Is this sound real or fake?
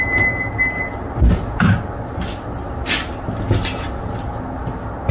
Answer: real